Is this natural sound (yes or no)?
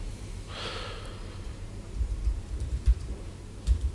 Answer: no